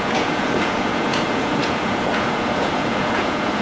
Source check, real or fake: fake